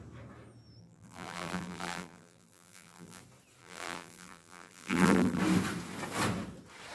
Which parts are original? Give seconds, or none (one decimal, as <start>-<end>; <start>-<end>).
0.0-0.8; 3.2-3.6; 5.4-6.9